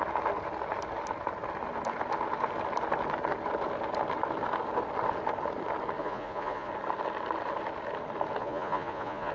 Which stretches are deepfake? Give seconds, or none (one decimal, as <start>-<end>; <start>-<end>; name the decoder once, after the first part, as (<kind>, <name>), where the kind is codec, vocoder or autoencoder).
6.0-6.7 (vocoder, Vocos); 8.4-9.3